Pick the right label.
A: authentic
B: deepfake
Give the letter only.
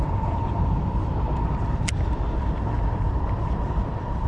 A